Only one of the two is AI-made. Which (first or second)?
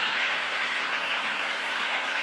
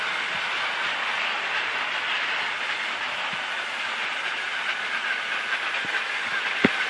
first